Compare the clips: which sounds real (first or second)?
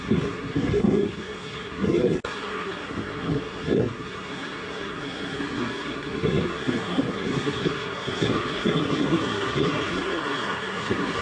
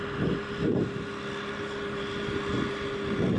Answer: second